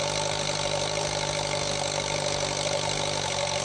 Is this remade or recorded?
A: recorded